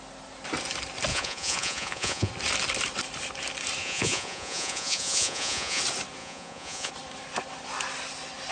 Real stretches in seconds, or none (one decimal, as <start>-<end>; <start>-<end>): 0.0-1.1; 2.3-3.8; 5.8-6.2; 6.9-8.5